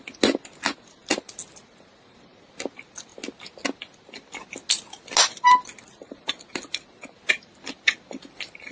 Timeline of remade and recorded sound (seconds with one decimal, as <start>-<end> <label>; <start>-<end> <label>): 0.0-8.7 recorded

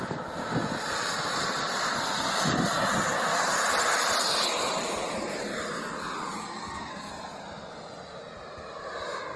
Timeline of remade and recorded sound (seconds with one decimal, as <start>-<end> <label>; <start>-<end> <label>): 0.0-6.4 recorded; 6.4-7.1 remade; 7.1-9.4 recorded

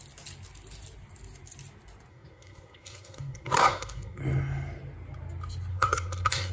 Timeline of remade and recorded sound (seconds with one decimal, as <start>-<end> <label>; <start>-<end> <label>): 0.0-2.1 recorded; 2.1-4.2 remade; 4.2-5.7 recorded; 5.7-6.5 remade

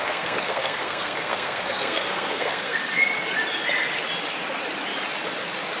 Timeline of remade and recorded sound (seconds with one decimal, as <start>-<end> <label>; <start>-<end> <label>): 0.0-2.8 remade; 2.8-5.8 recorded